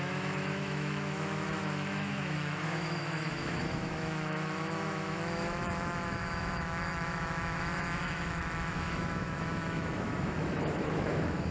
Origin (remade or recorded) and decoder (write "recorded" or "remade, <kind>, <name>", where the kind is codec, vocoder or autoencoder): remade, autoencoder, DAC-VAE